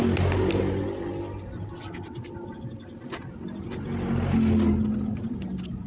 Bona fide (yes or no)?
yes